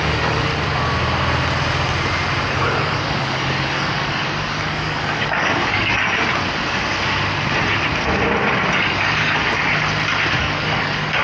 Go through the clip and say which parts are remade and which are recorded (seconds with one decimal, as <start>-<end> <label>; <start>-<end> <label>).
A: 0.0-0.5 remade; 0.5-2.5 recorded; 2.5-6.0 remade; 6.0-8.8 recorded; 8.8-9.4 remade; 9.4-10.4 recorded; 10.4-11.2 remade